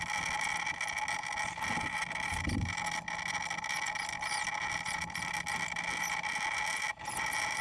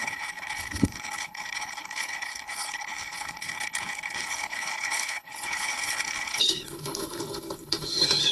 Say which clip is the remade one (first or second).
second